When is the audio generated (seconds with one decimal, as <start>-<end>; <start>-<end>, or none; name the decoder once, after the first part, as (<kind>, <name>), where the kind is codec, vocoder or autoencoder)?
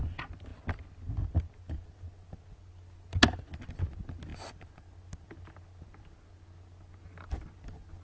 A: none